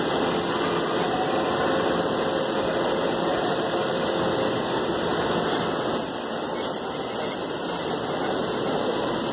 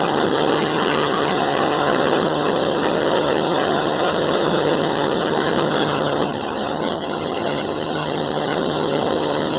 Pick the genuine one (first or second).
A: first